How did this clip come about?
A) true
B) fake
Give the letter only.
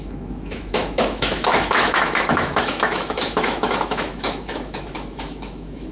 B